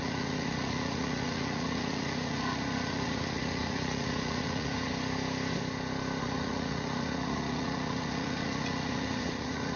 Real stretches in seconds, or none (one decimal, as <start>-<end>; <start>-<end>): 4.9-6.2